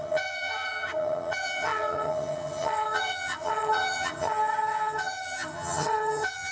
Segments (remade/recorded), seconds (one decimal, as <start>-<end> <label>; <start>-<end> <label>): 0.0-6.5 remade